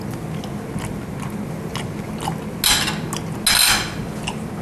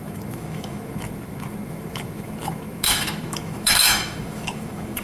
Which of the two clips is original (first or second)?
first